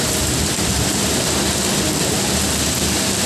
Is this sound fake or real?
fake